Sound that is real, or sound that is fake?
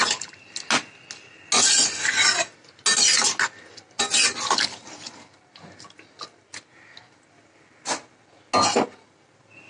real